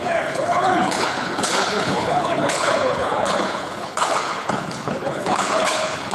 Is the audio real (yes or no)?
no